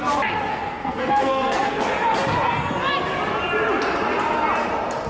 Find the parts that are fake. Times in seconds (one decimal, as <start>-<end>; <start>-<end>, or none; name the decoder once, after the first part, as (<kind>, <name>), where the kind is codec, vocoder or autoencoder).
0.5-1.8 (codec, SNAC)